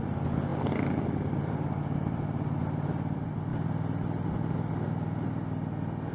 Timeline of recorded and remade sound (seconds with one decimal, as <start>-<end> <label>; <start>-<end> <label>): 0.0-6.1 recorded